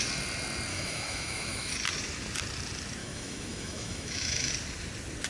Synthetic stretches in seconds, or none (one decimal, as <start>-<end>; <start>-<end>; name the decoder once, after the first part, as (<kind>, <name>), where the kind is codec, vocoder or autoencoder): 0.7-1.7 (autoencoder, DAC-VAE); 3.0-4.5